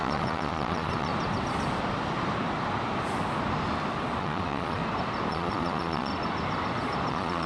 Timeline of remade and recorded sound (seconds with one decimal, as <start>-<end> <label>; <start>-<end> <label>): 0.0-1.1 remade; 1.1-4.2 recorded; 4.2-4.8 remade; 4.8-5.3 recorded; 5.3-6.1 remade; 6.1-7.1 recorded; 7.1-7.5 remade